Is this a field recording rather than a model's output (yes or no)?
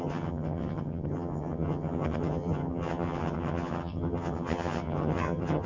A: no